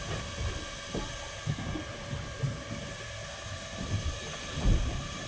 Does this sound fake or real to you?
real